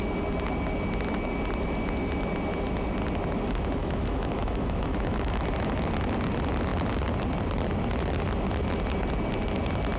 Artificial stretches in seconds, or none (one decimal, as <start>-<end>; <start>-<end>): 3.8-5.4